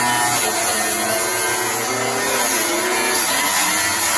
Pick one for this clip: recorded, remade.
recorded